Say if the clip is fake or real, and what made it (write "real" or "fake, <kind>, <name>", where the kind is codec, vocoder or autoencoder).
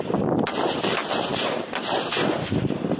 real